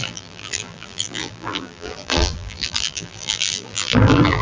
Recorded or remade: remade